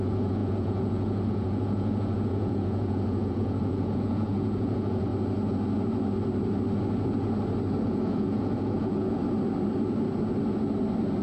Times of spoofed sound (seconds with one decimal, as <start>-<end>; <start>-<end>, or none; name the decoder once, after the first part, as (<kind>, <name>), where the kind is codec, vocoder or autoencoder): 0.0-5.1 (vocoder, Vocos); 7.8-9.2